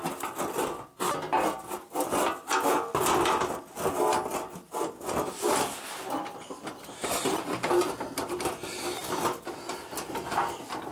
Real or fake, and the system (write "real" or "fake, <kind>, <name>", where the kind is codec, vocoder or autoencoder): real